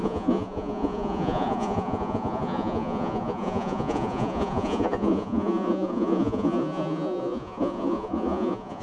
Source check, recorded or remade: remade